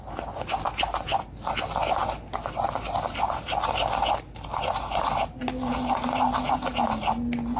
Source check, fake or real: real